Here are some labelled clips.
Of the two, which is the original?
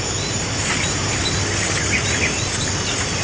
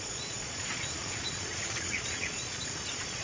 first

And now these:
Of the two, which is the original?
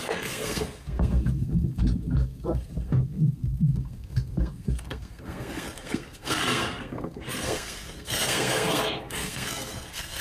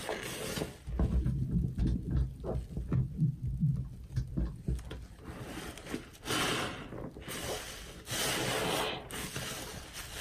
second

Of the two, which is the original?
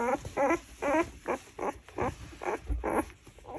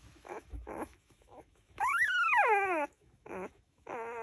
first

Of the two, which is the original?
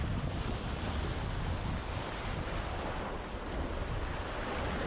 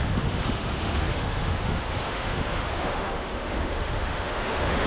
first